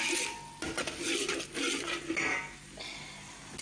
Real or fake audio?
real